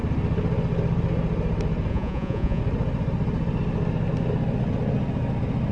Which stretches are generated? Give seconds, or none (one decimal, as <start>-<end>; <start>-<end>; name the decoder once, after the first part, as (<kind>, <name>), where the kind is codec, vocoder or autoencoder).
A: 1.9-2.6 (vocoder, Vocos)